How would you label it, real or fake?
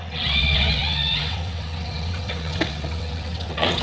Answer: fake